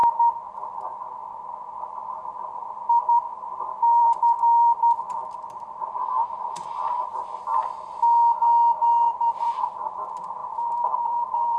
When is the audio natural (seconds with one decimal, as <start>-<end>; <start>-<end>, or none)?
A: 0.0-1.8; 7.5-9.1